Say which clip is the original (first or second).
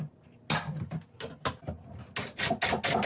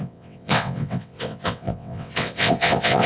first